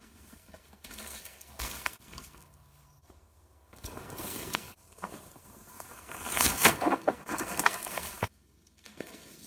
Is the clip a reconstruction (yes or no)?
yes